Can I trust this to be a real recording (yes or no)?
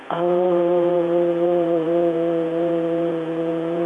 no